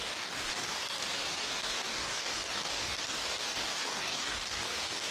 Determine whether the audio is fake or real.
fake